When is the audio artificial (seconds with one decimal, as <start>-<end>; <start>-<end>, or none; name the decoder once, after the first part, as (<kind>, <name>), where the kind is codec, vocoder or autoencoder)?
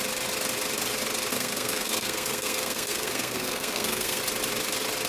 1.3-4.2 (codec, SNAC)